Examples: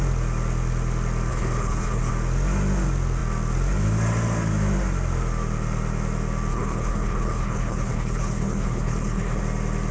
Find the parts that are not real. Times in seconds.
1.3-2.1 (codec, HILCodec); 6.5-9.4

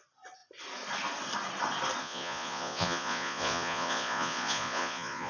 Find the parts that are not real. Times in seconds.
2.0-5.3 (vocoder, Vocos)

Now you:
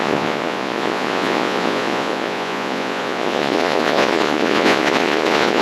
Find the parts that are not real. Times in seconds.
0.0-5.6 (vocoder, Vocos)

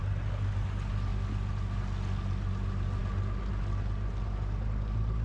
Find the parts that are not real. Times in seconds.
none

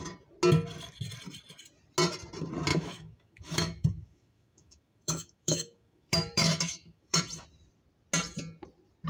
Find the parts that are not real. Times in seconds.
2.7-7.2 (autoencoder, DAC-VAE)

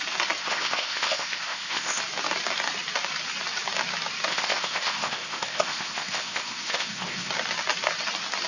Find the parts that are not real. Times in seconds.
0.4-2.0 (codec, ZipCodec); 4.3-7.3

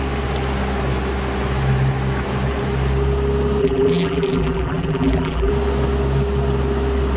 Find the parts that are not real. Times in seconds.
3.6-5.5 (vocoder, BigVGAN v2)

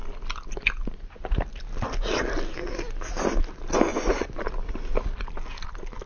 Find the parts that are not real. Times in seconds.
3.9-4.5 (vocoder, Vocos)